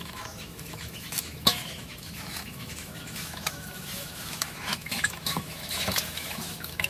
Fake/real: fake